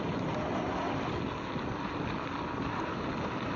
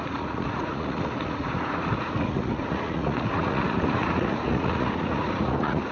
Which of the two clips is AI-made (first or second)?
second